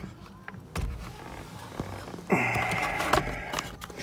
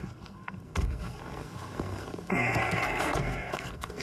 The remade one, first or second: second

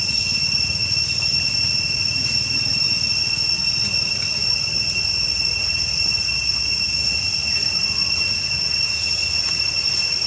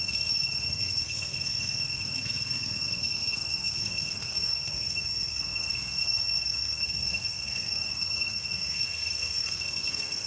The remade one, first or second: second